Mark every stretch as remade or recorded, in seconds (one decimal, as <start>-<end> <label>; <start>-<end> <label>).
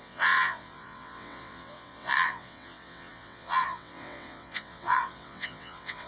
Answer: 0.0-6.1 remade